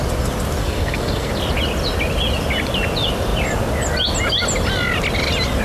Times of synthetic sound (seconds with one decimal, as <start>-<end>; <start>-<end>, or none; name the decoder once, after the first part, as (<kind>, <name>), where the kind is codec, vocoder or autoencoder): 0.6-1.3 (codec, SNAC)